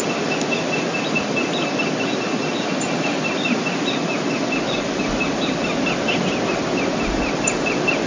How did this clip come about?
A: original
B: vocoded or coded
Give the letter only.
A